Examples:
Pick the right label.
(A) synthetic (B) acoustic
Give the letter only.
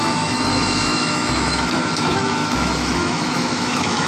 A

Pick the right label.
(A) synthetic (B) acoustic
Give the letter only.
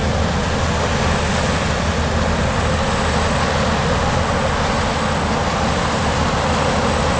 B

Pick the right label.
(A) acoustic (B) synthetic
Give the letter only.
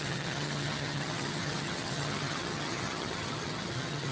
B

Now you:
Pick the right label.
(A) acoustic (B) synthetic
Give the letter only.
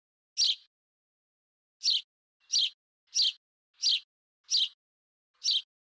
A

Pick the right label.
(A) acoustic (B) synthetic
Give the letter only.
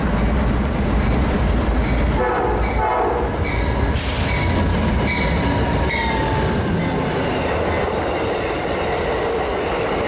A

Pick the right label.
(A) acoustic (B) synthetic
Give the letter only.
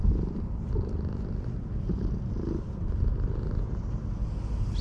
A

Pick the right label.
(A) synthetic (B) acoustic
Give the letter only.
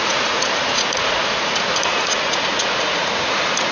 A